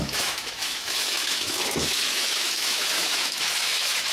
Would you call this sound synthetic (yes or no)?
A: yes